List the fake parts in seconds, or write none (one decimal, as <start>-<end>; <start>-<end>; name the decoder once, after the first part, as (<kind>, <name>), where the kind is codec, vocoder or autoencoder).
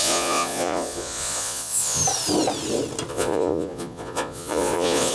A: 0.0-2.0 (vocoder, Vocos); 3.1-5.1